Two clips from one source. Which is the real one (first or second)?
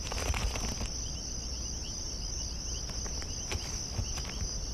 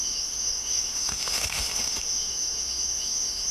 first